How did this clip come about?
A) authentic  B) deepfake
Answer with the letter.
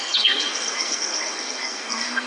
B